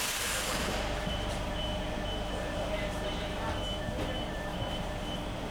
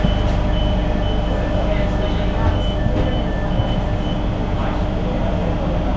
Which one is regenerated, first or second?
first